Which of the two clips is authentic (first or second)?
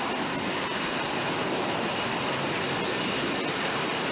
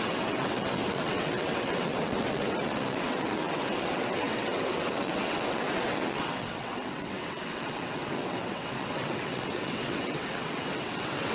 first